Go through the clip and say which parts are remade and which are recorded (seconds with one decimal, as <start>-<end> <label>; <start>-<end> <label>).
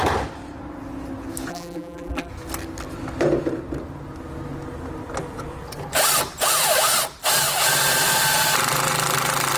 0.0-1.5 recorded; 1.5-2.3 remade; 2.3-9.6 recorded